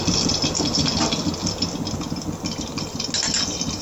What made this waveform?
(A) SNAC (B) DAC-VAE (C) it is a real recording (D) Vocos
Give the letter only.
C